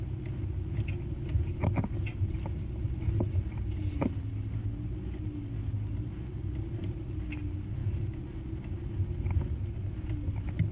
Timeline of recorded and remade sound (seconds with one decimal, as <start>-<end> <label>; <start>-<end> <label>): 0.0-10.7 recorded